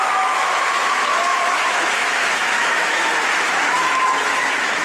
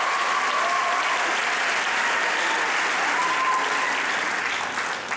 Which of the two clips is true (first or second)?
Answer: second